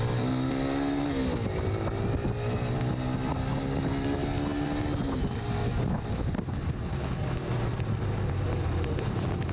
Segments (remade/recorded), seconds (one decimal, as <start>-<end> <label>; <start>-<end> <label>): 0.0-9.5 recorded